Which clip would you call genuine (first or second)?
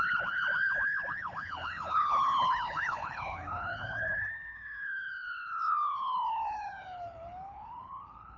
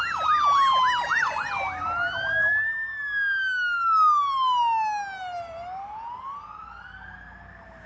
second